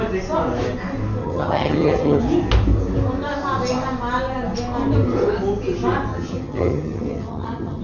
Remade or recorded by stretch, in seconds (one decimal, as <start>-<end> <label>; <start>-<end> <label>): 0.0-1.2 recorded; 1.2-2.2 remade; 2.2-6.1 recorded; 6.1-7.8 remade